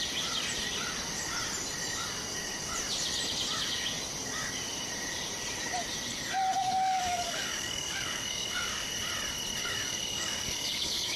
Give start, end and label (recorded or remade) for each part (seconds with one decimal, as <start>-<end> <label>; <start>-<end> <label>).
0.0-6.6 recorded; 6.6-8.9 remade; 8.9-9.6 recorded; 9.6-11.2 remade